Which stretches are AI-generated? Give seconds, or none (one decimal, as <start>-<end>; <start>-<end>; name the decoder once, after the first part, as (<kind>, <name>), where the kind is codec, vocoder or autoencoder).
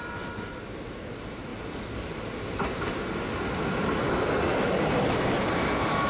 none